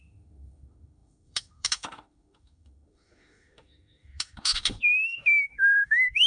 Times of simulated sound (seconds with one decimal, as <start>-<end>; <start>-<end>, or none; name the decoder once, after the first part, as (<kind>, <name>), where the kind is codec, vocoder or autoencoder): 0.0-6.3 (autoencoder, DAC-VAE)